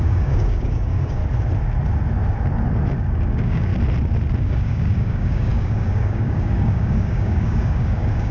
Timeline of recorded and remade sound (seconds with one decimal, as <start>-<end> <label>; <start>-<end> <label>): 0.0-1.2 remade; 1.2-3.0 recorded; 3.0-3.7 remade; 3.7-4.4 recorded; 4.4-8.3 remade